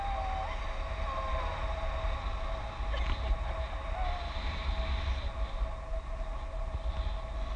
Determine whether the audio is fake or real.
real